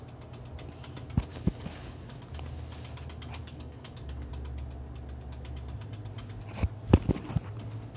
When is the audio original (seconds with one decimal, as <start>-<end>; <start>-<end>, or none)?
0.0-1.3; 2.2-3.4; 4.3-8.0